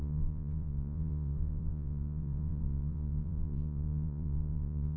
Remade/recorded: remade